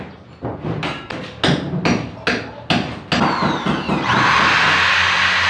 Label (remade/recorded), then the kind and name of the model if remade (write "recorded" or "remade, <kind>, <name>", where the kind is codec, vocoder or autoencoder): recorded